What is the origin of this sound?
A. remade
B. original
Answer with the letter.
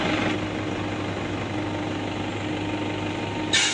B